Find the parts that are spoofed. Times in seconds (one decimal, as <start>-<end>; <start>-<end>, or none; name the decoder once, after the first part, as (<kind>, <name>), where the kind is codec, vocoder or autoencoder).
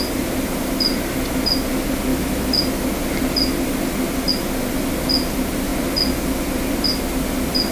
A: none